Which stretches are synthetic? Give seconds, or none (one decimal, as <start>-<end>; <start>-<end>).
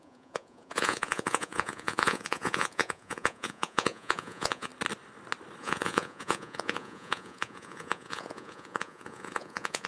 0.0-4.7; 5.6-9.9